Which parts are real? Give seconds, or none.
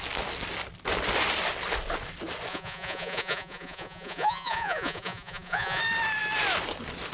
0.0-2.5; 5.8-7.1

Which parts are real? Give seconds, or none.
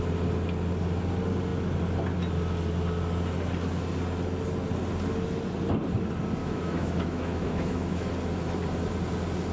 0.0-6.4; 8.1-9.5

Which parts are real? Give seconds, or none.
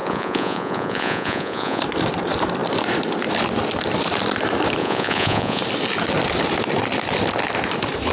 1.8-4.8; 5.6-8.1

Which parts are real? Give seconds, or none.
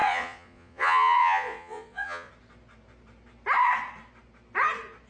2.3-5.1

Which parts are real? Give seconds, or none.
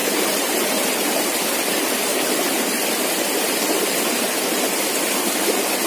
1.4-5.9